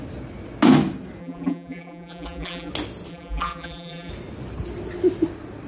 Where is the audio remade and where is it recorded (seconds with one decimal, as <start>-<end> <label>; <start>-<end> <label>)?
0.0-1.2 recorded; 1.2-2.7 remade; 2.7-3.1 recorded; 3.1-4.1 remade; 4.1-5.7 recorded